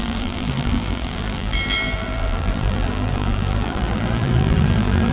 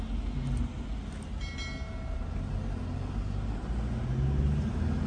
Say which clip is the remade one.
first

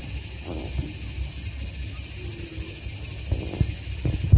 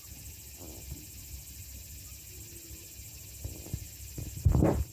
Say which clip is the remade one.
second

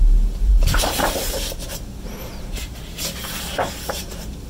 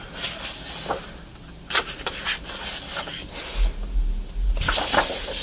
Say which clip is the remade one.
first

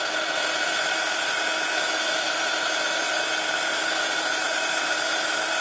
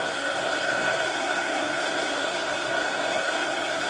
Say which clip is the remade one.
second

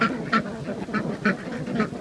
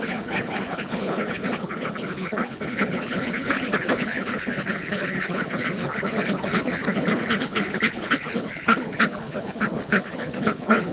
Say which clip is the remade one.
second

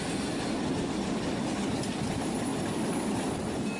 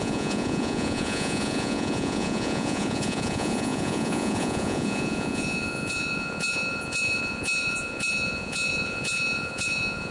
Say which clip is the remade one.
second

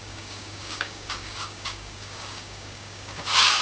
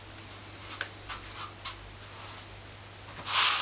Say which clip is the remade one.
first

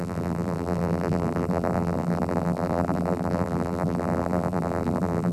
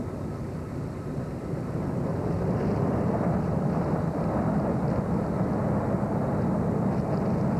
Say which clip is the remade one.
first